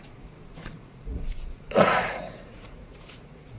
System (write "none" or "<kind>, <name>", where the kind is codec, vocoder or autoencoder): vocoder, Vocos